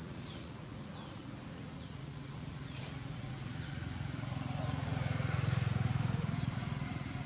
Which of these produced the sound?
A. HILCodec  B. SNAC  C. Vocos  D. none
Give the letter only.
C